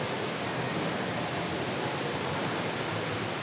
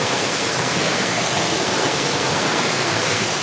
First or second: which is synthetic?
second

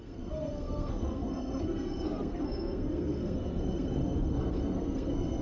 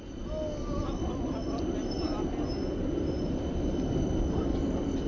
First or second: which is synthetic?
first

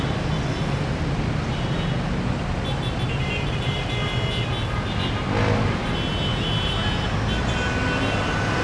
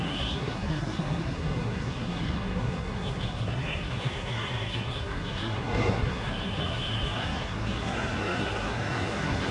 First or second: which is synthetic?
second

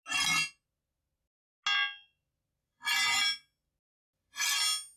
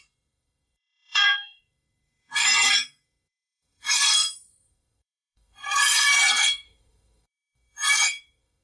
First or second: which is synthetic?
second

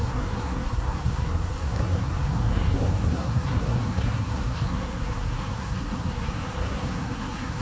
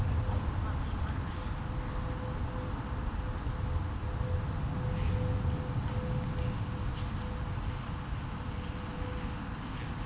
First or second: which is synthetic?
first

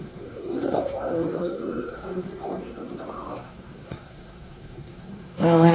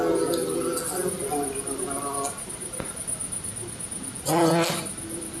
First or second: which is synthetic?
first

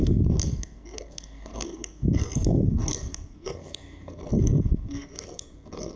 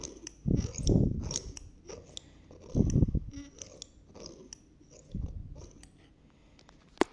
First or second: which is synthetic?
first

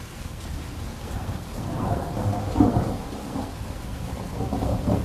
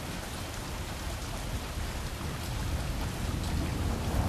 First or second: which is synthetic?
first